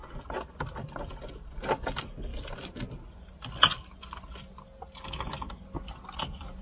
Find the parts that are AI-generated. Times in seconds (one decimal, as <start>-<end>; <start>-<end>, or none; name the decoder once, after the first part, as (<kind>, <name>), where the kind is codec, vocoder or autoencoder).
none